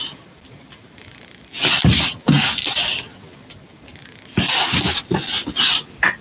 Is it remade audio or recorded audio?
recorded